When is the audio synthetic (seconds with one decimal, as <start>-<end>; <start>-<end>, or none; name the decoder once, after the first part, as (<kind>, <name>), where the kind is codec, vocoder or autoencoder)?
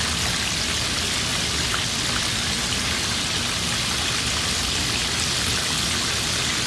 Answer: none